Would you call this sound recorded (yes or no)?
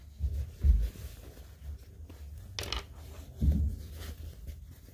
yes